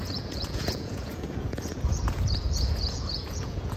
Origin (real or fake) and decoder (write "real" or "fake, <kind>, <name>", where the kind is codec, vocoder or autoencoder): fake, vocoder, Vocos